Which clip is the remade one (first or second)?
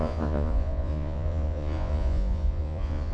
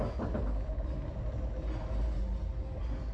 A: first